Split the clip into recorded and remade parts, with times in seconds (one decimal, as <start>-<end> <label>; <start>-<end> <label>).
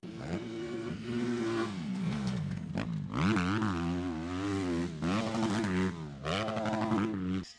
0.0-2.7 remade; 2.7-7.6 recorded